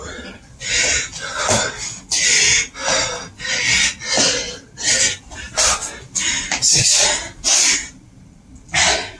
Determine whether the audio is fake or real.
real